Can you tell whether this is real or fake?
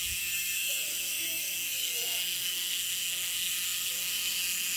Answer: fake